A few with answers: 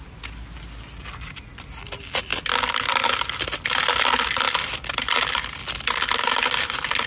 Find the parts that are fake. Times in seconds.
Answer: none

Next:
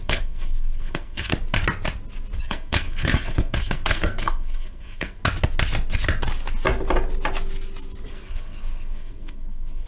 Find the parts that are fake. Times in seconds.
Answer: 0.0-1.3 (codec, SNAC); 2.4-5.2; 8.1-9.9

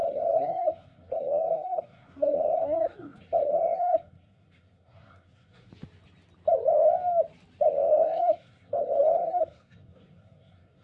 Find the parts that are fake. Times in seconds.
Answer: 0.0-5.7 (codec, SNAC); 7.7-10.8

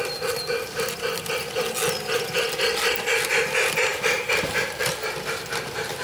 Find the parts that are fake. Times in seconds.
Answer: 3.9-4.8 (vocoder, BigVGAN v2)